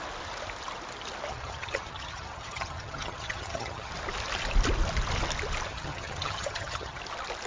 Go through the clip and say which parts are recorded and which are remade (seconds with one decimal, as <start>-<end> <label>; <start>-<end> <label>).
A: 0.0-1.3 recorded; 1.3-3.9 remade; 3.9-5.7 recorded; 5.7-7.0 remade; 7.0-7.5 recorded